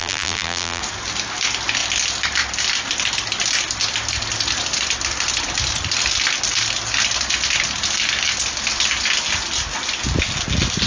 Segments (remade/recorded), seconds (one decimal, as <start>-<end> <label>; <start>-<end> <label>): 0.0-0.8 remade; 0.8-10.9 recorded